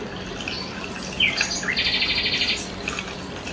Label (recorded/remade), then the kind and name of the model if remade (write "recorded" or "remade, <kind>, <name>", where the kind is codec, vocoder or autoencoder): recorded